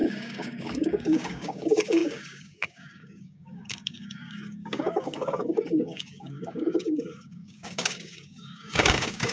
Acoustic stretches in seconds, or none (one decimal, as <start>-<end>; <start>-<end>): none